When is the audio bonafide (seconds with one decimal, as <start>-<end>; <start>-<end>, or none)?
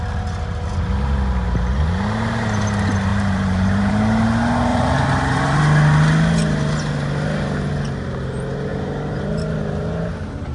0.0-3.1; 3.9-4.7; 5.6-8.7